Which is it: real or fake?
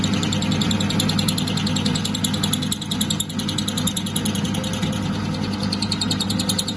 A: real